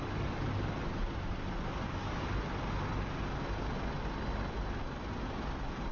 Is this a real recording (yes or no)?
yes